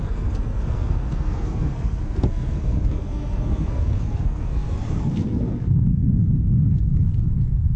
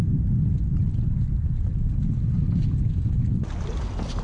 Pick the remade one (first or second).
first